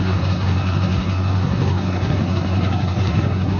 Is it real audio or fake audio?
fake